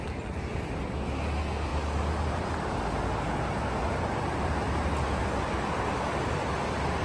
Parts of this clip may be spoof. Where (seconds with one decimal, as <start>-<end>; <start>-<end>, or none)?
none